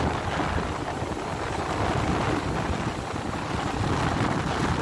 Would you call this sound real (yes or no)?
yes